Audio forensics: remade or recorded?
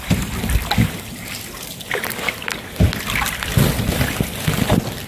recorded